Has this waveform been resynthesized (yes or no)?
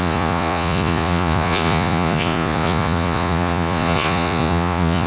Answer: yes